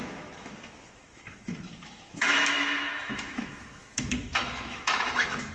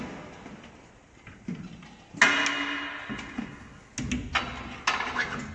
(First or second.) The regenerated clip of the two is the first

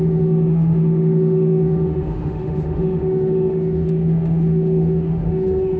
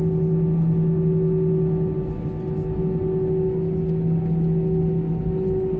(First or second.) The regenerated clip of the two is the first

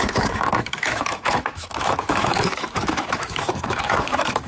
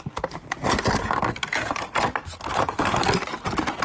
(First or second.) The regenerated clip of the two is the first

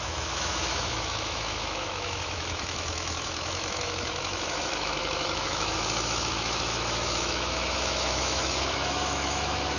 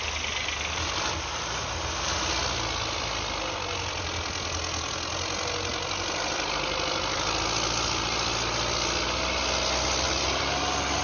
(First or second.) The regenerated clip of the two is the first